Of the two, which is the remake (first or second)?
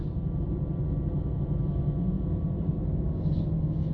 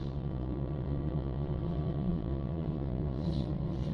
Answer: second